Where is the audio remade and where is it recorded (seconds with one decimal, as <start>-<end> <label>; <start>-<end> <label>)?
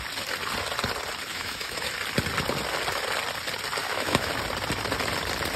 0.0-1.3 recorded; 1.3-1.9 remade; 1.9-3.8 recorded; 3.8-4.3 remade; 4.3-5.6 recorded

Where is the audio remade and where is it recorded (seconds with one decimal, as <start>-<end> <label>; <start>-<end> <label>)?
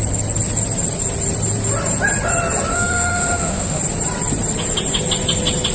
0.0-2.7 recorded; 2.7-3.8 remade; 3.8-5.7 recorded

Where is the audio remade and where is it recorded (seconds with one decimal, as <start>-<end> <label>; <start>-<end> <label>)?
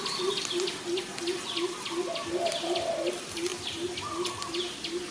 0.0-5.1 recorded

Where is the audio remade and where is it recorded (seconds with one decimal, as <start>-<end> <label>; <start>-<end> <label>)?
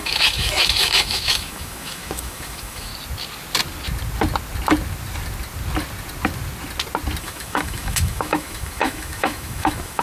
0.0-2.9 remade; 2.9-7.2 recorded; 7.2-10.0 remade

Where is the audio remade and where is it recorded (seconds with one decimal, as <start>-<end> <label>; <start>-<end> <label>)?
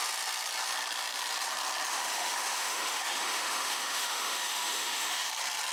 0.0-1.9 recorded; 1.9-5.3 remade; 5.3-5.7 recorded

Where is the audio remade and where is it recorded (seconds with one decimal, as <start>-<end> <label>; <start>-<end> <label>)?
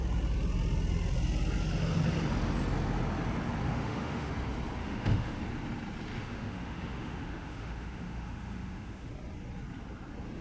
0.0-3.7 recorded; 3.7-4.3 remade; 4.3-4.8 recorded; 4.8-5.4 remade; 5.4-6.2 recorded; 6.2-9.1 remade; 9.1-10.4 recorded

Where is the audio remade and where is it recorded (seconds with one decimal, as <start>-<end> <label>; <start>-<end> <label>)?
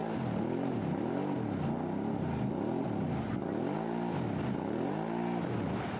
0.0-6.0 recorded